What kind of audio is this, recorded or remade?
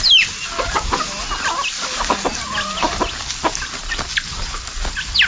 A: recorded